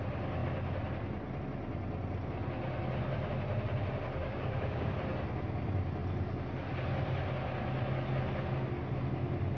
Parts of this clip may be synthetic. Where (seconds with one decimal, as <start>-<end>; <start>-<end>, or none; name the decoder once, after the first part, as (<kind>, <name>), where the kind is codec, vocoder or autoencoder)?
4.2-4.9 (codec, DAC)